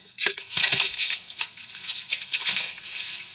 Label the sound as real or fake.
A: fake